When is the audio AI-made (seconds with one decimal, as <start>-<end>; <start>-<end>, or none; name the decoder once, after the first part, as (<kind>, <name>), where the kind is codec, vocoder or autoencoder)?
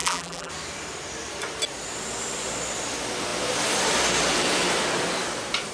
0.0-0.5 (vocoder, BigVGAN v2)